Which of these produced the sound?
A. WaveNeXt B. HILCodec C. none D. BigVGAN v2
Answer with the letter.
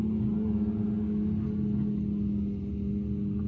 C